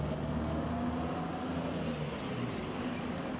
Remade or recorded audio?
recorded